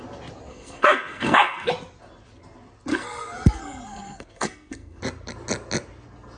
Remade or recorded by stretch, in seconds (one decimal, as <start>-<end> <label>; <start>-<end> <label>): 0.0-0.5 recorded; 0.5-1.7 remade; 1.7-2.9 recorded; 2.9-5.0 remade; 5.0-6.4 recorded